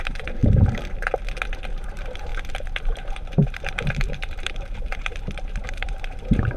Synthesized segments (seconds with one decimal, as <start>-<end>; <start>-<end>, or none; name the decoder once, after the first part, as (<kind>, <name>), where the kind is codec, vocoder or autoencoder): 0.0-0.4 (vocoder, BigVGAN v2); 1.8-2.3; 2.8-6.6